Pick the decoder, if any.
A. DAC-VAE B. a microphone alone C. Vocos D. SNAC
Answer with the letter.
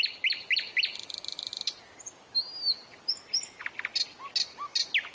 B